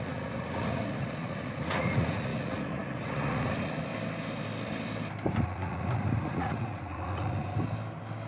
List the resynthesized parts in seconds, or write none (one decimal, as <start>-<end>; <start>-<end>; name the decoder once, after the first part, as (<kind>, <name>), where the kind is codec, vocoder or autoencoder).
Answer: 0.0-3.9 (vocoder, Vocos); 5.4-7.5